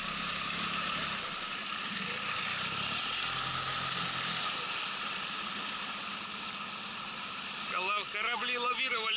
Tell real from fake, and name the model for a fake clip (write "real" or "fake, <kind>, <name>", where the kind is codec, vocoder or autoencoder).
real